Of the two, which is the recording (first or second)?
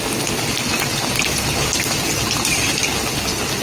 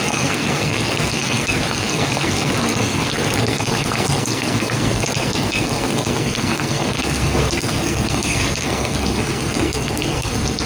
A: first